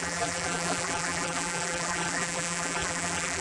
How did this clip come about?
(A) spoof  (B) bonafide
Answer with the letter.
A